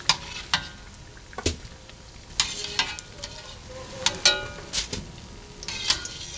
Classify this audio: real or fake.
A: real